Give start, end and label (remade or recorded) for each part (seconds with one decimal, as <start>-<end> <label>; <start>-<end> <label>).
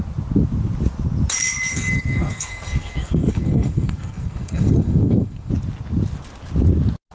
0.0-1.7 recorded; 1.7-5.5 remade; 5.5-7.1 recorded